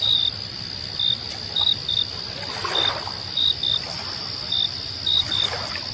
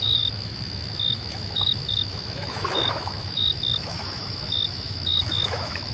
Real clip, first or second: first